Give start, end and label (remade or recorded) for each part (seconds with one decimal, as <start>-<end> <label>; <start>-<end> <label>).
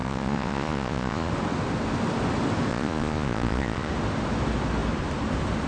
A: 0.0-1.3 remade; 1.3-2.7 recorded; 2.7-3.9 remade; 3.9-5.7 recorded